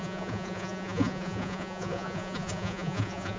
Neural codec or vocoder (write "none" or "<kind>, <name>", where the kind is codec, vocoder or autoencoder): vocoder, Vocos